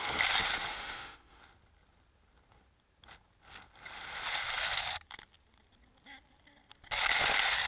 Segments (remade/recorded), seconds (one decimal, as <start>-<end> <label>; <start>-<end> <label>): 0.0-0.7 recorded; 0.7-1.4 remade; 1.4-7.7 recorded